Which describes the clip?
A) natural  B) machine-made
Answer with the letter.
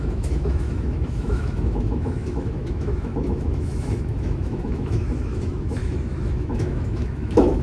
B